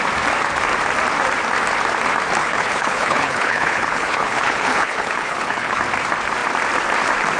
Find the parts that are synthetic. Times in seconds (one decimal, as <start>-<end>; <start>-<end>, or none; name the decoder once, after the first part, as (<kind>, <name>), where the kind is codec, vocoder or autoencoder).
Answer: 2.4-5.8 (codec, HILCodec)